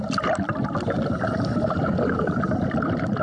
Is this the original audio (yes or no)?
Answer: yes